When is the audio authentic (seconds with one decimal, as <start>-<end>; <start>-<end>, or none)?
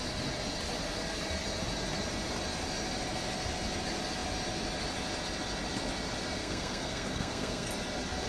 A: 0.0-6.4; 7.7-8.3